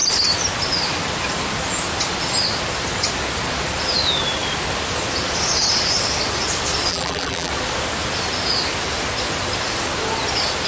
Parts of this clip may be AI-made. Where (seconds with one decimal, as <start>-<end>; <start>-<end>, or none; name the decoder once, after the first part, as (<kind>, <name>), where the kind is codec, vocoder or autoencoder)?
6.9-7.5 (vocoder, BigVGAN v2)